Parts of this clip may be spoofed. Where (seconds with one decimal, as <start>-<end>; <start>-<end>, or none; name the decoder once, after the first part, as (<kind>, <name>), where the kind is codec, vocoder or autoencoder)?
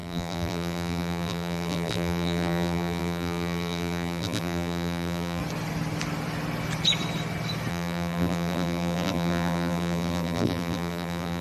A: 0.0-5.4 (vocoder, BigVGAN v2); 7.7-11.4